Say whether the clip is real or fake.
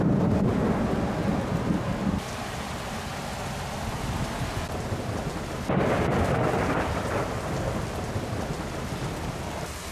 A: real